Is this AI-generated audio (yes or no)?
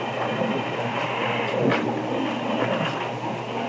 no